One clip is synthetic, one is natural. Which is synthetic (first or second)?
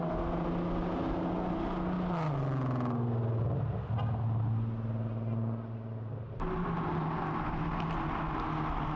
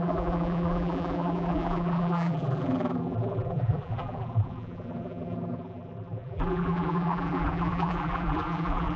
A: second